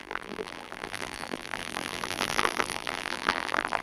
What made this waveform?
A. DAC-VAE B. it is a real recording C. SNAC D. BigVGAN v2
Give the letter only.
D